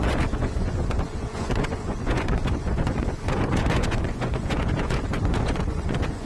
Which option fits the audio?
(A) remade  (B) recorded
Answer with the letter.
A